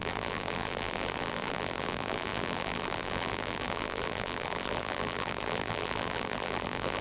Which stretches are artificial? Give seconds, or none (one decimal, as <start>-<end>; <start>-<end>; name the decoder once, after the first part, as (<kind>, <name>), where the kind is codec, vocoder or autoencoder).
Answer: 0.0-7.0 (vocoder, BigVGAN v2)

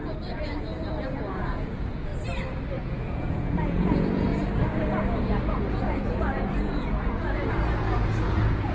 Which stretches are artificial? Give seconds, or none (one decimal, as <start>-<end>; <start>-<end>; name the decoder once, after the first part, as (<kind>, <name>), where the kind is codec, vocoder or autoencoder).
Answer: 0.0-2.1 (vocoder, Vocos); 2.8-4.3; 5.2-8.7

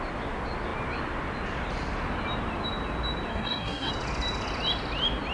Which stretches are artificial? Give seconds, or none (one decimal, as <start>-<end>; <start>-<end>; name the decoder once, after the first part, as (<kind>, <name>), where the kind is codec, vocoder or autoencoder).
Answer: 3.3-3.9 (codec, SNAC)

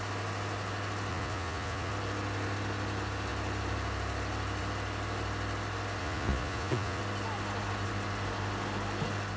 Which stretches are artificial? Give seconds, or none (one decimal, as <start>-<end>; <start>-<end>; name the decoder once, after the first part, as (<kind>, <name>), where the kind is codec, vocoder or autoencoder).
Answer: 1.1-1.9 (vocoder, Vocos); 6.0-7.0

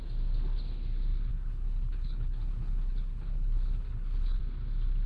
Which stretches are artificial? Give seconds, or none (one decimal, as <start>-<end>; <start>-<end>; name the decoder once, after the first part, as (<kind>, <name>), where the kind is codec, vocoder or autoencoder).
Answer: 1.3-4.4 (codec, HILCodec)

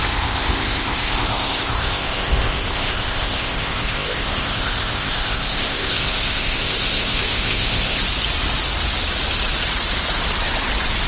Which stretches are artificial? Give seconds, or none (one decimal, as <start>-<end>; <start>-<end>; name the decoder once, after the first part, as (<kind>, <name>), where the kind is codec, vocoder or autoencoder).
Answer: 0.0-8.0 (codec, ZipCodec)

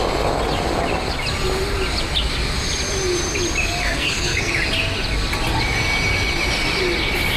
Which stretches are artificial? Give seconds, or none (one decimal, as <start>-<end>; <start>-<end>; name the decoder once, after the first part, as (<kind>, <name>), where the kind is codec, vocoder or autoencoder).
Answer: 3.8-4.5 (codec, SNAC)